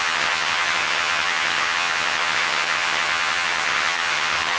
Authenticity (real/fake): fake